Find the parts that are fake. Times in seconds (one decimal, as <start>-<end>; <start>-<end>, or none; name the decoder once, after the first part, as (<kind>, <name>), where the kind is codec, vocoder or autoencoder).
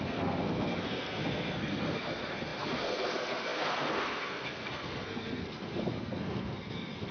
0.0-7.1 (codec, SNAC)